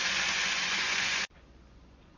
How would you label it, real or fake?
fake